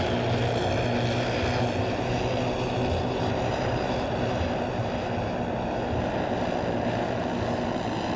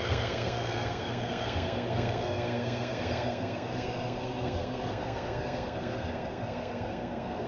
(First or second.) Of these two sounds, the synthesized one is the second